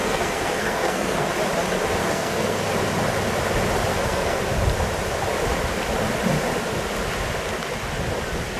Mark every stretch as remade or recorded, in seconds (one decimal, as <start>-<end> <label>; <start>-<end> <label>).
0.0-1.3 remade; 1.3-2.0 recorded; 2.0-2.6 remade; 2.6-3.9 recorded; 3.9-4.4 remade; 4.4-8.6 recorded